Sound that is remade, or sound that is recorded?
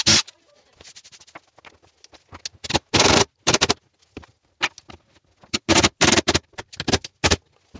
recorded